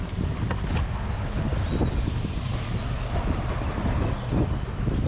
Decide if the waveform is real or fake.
real